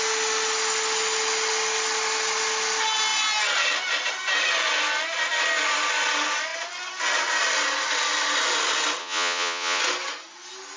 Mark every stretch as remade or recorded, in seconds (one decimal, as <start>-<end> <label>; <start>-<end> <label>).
0.0-9.0 recorded; 9.0-9.8 remade; 9.8-10.8 recorded